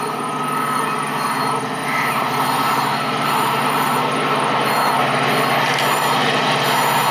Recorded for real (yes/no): yes